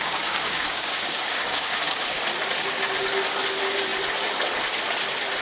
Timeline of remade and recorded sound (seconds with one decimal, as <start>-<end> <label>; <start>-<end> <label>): 0.0-1.8 remade; 1.8-5.4 recorded